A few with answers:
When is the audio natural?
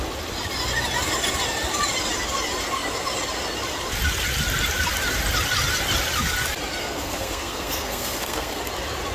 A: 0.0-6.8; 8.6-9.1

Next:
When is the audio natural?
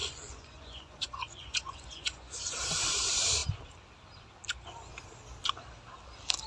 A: 2.4-6.5